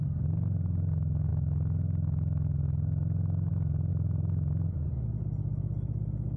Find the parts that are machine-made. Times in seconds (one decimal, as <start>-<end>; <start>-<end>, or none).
1.3-3.5